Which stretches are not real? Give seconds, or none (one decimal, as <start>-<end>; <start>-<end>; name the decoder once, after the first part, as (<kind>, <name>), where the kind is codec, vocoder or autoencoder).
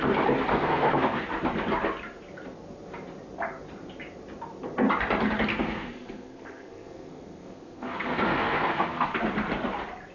0.5-1.2 (codec, SNAC); 5.5-9.2